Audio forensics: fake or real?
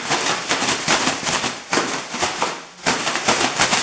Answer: real